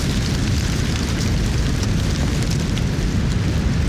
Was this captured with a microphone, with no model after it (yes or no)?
yes